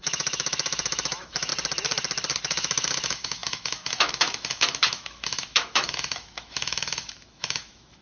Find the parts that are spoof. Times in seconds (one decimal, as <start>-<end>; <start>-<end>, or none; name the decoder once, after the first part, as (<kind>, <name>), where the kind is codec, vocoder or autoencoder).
0.0-1.5 (autoencoder, DAC-VAE); 2.4-8.0